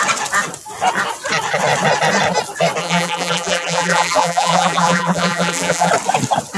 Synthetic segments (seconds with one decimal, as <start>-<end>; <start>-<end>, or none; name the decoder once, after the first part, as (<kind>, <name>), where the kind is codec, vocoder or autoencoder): 2.8-5.9 (vocoder, BigVGAN v2)